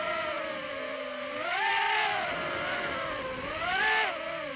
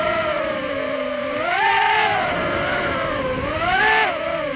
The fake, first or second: second